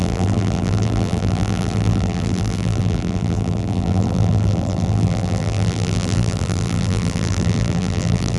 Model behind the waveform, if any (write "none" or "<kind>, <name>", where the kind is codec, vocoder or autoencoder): vocoder, BigVGAN v2